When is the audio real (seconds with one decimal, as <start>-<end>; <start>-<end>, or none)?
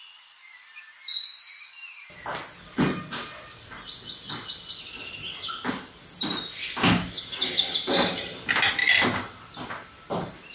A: 0.0-10.5